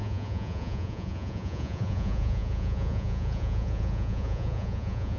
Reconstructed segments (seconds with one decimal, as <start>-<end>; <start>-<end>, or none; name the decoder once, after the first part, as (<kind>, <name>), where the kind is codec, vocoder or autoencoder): 0.0-5.2 (vocoder, Vocos)